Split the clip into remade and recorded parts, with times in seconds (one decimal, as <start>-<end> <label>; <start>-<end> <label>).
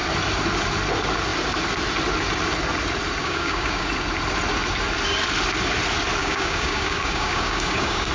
0.0-3.2 recorded; 3.2-3.9 remade; 3.9-6.2 recorded; 6.2-8.1 remade